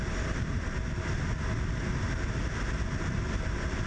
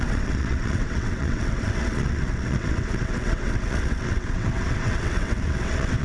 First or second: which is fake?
second